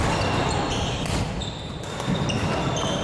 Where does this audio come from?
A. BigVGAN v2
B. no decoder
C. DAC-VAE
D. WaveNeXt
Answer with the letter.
B